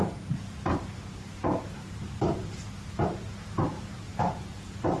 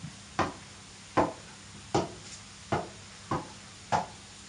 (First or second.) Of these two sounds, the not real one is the first